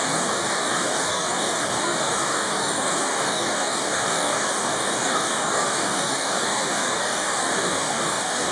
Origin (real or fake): fake